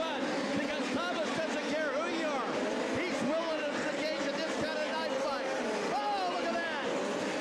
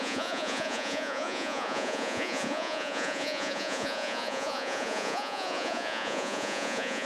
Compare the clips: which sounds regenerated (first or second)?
second